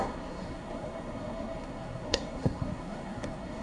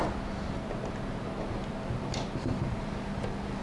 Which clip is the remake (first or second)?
first